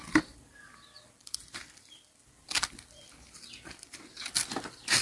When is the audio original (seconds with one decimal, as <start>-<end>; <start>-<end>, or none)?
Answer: 0.0-5.0